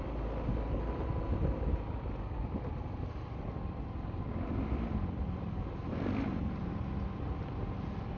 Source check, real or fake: real